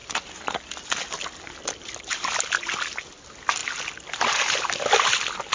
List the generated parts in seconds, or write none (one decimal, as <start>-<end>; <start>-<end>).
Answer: none